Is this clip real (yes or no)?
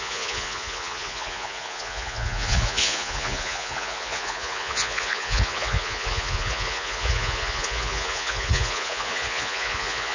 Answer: no